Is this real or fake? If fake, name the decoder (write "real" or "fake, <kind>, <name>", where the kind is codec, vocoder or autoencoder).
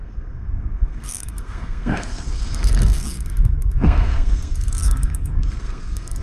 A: fake, codec, SNAC